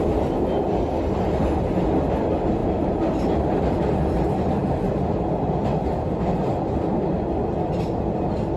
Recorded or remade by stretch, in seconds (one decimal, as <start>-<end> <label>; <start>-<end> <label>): 0.0-8.6 recorded